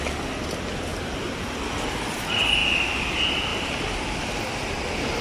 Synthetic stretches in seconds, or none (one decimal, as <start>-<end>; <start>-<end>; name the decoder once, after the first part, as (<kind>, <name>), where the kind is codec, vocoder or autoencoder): none